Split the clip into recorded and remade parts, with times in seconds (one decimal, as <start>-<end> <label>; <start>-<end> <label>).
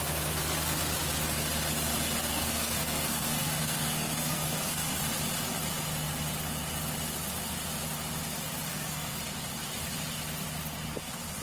0.0-2.2 recorded; 2.2-5.0 remade; 5.0-8.7 recorded; 8.7-9.2 remade; 9.2-11.4 recorded